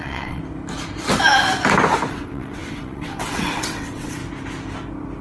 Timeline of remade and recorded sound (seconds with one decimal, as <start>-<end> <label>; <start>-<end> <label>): 0.0-0.4 remade; 0.4-2.1 recorded; 2.1-4.2 remade; 4.2-5.2 recorded